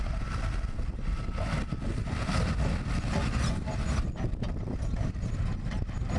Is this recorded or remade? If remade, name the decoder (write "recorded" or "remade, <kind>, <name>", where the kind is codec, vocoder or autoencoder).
recorded